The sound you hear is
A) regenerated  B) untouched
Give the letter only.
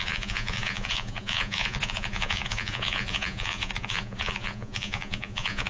A